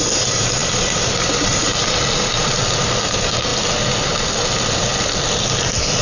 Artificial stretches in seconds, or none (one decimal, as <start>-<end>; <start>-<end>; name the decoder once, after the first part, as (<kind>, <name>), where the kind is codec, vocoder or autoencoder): 0.6-2.8 (vocoder, BigVGAN v2)